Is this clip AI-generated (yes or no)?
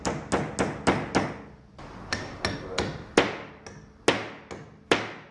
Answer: no